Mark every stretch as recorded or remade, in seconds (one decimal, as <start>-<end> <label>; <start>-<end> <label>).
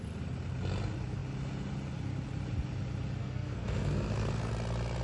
0.0-3.2 recorded; 3.2-4.5 remade; 4.5-5.0 recorded